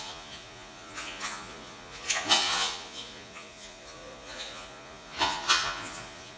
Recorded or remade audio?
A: remade